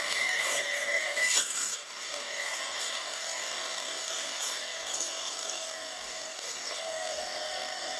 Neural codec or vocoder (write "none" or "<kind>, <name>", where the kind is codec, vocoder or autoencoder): codec, DAC